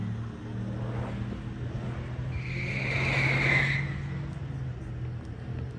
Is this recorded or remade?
recorded